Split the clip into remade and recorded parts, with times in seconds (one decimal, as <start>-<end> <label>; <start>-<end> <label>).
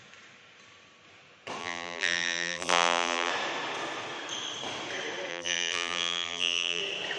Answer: 0.0-1.6 recorded; 1.6-3.3 remade; 3.3-5.3 recorded; 5.3-6.8 remade; 6.8-7.2 recorded